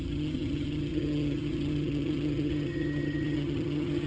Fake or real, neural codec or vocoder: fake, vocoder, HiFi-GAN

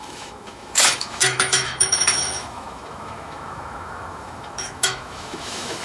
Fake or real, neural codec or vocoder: fake, autoencoder, DAC-VAE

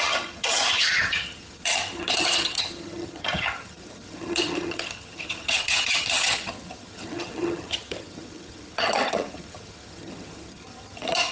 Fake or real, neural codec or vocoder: fake, vocoder, HiFi-GAN